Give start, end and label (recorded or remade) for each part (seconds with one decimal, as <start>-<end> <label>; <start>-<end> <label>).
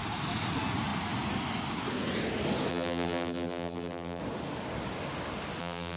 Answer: 0.0-2.7 recorded; 2.7-4.2 remade; 4.2-5.6 recorded; 5.6-6.0 remade